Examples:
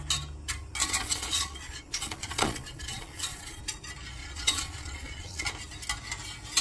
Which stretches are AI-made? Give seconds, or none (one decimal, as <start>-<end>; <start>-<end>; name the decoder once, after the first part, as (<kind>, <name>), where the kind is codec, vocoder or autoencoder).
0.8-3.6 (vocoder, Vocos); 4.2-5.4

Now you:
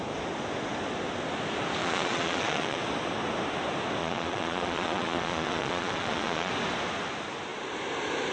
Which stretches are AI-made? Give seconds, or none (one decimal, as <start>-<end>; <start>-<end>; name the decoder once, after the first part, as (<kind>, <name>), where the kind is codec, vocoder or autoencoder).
1.8-2.8 (vocoder, Vocos); 4.0-6.5

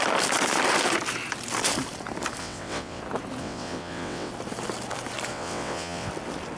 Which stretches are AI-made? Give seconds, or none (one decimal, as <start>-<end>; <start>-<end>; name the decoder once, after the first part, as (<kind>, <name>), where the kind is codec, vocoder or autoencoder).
2.4-3.0 (vocoder, WaveNeXt); 3.4-4.3; 5.3-6.1

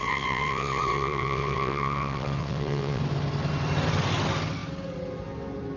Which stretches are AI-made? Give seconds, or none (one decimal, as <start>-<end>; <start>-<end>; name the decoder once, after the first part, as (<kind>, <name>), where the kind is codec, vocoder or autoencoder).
0.0-3.0 (vocoder, WaveNeXt)

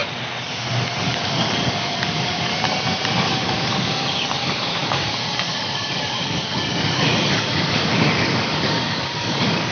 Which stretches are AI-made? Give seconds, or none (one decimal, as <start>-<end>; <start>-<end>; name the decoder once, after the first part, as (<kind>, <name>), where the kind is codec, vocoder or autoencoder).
1.0-2.5 (codec, DAC); 3.2-9.7

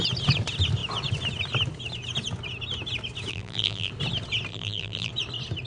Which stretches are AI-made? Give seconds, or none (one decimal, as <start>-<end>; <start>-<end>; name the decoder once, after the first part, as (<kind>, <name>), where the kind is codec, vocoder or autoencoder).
3.3-3.9 (vocoder, BigVGAN v2); 4.5-5.1

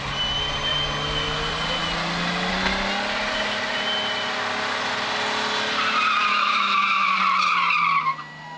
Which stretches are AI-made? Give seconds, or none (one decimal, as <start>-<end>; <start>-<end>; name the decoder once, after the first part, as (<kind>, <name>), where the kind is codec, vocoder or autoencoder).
6.3-7.1 (autoencoder, DAC-VAE)